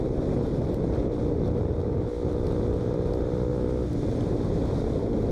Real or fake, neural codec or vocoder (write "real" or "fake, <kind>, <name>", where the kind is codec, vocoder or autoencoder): real